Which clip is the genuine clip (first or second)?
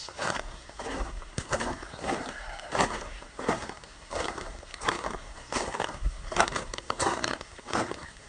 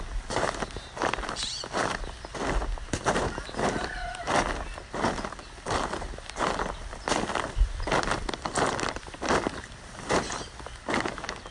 second